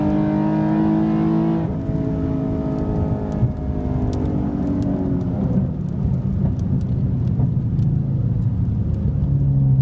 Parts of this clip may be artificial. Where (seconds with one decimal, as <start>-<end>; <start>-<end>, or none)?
none